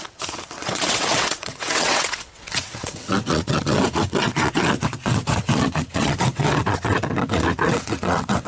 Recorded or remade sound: remade